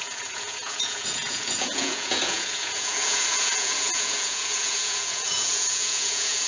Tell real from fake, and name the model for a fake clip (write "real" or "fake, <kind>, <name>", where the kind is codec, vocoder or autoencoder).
fake, vocoder, Vocos